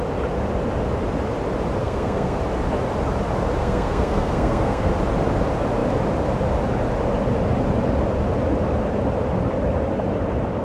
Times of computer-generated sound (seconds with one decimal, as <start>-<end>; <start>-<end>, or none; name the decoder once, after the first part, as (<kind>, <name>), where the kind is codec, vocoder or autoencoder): 1.8-2.4 (codec, SNAC); 3.6-4.9